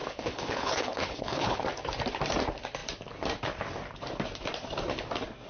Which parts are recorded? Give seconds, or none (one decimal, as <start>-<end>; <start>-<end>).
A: 1.6-5.5